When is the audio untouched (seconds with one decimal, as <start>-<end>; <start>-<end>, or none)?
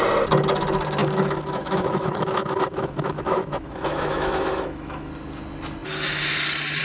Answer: 0.0-1.0; 5.1-6.8